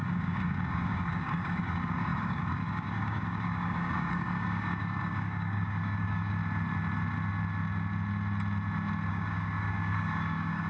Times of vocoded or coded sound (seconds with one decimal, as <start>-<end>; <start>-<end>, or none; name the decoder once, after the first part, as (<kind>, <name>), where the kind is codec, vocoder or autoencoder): 0.0-6.4 (codec, DAC); 9.1-10.7